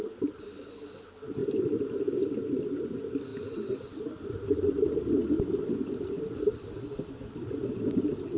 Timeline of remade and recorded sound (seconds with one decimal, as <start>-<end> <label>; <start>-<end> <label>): 0.0-8.4 recorded